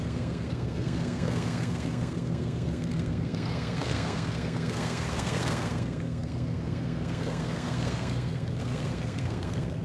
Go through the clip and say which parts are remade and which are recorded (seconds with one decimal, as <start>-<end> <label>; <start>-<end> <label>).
0.0-9.8 remade